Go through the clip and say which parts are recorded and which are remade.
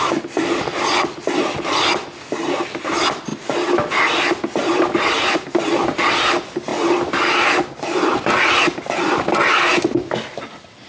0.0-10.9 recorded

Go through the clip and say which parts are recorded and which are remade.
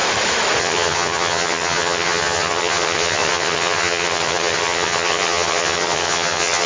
0.0-0.6 recorded; 0.6-6.7 remade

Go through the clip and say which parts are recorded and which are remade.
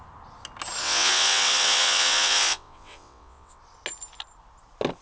0.0-0.8 recorded; 0.8-3.6 remade; 3.6-5.0 recorded